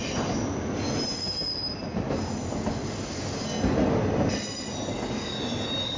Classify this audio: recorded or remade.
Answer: recorded